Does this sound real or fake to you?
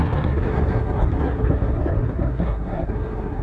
fake